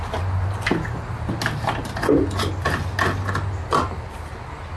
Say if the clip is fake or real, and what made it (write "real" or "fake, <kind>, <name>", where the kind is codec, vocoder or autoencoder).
real